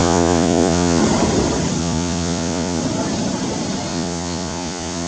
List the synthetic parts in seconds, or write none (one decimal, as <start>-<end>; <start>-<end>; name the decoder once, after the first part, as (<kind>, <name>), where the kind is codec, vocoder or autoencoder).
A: 0.0-1.0 (vocoder, Vocos); 1.8-2.8; 3.9-5.1